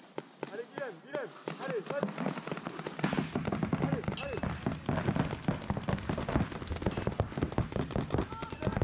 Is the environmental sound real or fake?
real